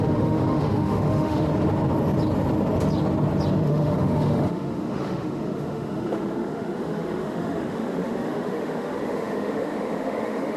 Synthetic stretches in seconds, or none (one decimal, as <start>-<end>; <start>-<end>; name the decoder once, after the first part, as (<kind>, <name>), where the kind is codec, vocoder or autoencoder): 0.0-1.5 (autoencoder, DAC-VAE); 3.5-10.6